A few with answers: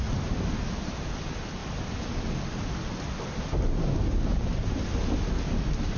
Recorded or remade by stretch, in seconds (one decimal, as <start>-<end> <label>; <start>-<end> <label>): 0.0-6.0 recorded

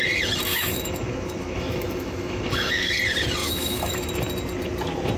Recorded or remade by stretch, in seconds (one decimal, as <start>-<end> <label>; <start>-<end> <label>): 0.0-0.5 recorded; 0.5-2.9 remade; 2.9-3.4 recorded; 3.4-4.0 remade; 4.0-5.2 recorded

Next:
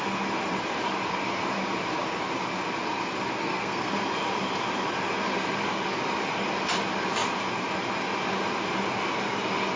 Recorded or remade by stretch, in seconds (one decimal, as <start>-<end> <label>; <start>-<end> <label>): 0.0-3.4 recorded; 3.4-4.0 remade; 4.0-9.8 recorded

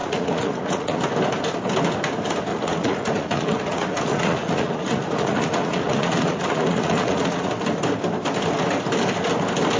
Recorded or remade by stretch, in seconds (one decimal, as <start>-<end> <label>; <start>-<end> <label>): 0.0-1.0 remade; 1.0-2.5 recorded; 2.5-7.5 remade; 7.5-9.8 recorded

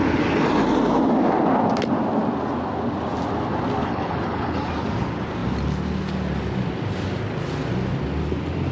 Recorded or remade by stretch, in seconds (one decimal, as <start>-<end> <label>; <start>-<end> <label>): 0.0-3.8 recorded; 3.8-4.7 remade; 4.7-8.7 recorded

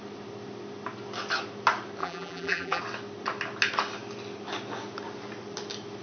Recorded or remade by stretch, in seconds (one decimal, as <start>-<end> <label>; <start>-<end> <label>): 0.0-2.0 recorded; 2.0-2.8 remade; 2.8-6.0 recorded

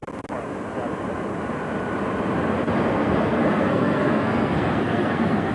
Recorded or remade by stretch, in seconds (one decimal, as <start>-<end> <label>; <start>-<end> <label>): 0.0-2.9 recorded; 2.9-5.5 remade

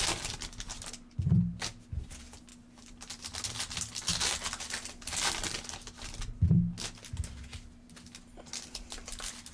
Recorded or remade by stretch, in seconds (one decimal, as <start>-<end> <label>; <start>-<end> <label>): 0.0-9.5 recorded